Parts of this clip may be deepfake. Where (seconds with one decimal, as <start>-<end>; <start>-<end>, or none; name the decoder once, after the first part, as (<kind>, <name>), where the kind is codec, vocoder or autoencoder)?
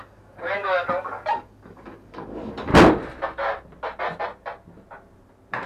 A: 0.0-2.7 (codec, DAC)